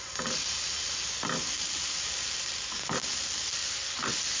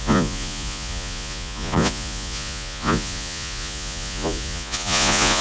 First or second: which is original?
first